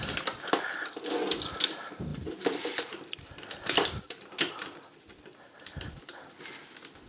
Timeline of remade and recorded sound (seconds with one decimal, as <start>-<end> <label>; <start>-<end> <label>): 0.0-2.1 recorded; 2.1-6.4 remade; 6.4-7.1 recorded